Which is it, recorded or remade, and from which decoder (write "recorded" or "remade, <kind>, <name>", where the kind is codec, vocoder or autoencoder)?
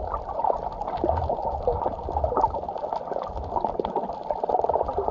recorded